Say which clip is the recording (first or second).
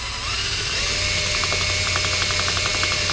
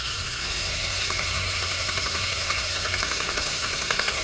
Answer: first